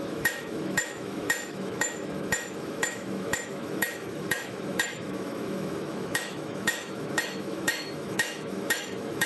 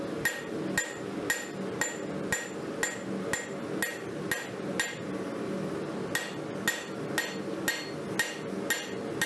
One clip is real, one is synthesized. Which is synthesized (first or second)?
first